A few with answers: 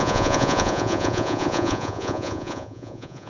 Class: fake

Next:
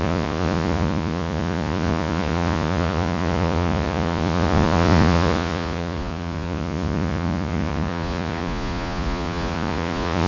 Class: fake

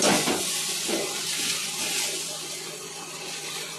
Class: fake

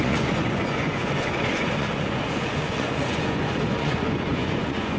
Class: fake